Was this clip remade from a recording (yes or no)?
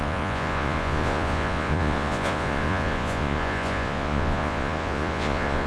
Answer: yes